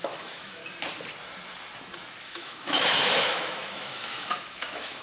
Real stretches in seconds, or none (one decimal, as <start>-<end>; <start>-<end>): 0.6-2.2